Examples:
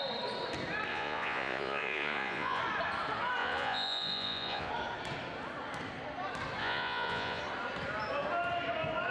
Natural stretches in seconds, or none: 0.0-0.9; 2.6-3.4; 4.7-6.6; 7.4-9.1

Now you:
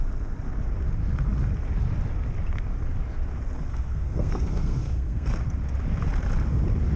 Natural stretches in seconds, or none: 0.0-3.7; 5.4-7.0

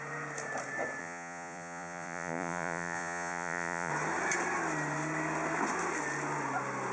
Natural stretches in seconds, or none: 0.0-1.0; 3.9-6.9

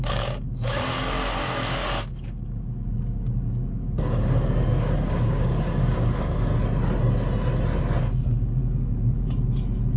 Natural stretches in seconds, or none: 6.5-8.0; 8.6-10.0